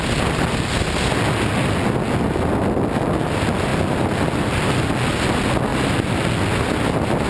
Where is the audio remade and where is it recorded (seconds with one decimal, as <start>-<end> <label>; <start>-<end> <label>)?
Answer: 0.0-7.3 recorded